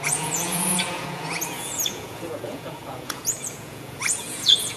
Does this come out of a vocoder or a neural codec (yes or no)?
yes